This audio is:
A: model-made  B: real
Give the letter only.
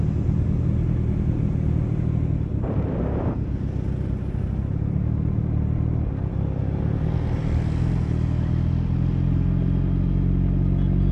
B